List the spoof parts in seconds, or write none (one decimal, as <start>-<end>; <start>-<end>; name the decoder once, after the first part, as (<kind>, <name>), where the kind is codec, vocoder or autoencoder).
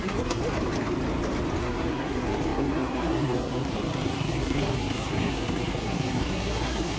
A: 0.0-0.4 (codec, SNAC); 1.6-7.0